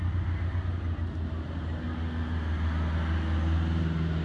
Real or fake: real